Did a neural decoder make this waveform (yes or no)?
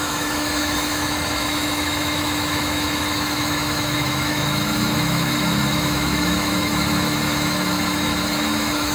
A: yes